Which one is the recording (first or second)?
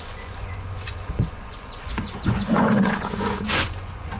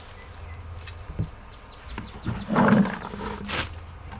second